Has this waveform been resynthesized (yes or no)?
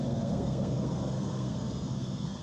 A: yes